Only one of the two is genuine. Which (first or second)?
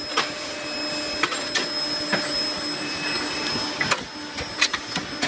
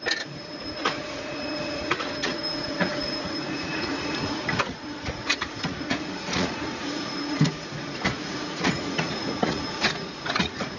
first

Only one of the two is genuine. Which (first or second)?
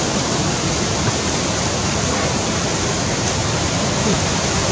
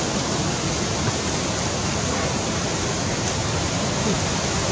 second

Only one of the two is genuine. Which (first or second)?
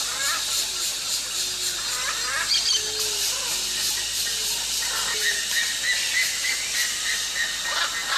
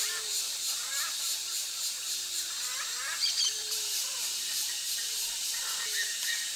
first